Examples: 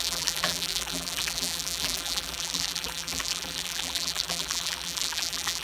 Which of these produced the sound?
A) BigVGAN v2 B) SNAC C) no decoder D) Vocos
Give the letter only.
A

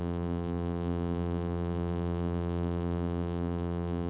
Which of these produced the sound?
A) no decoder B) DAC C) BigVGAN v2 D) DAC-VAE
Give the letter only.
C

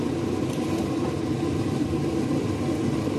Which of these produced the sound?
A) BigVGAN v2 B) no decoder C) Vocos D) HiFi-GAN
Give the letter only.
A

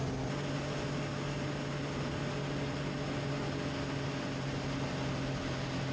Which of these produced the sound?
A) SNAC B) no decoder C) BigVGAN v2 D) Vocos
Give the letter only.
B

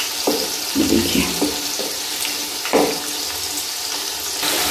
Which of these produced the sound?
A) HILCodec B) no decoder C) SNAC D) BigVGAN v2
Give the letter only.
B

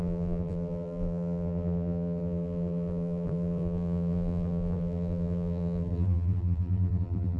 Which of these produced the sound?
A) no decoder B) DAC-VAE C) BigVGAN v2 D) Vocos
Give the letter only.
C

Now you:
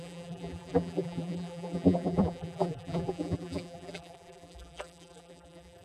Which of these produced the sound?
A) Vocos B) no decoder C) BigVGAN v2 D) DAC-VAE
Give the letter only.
C